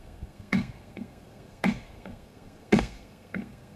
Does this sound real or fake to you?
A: fake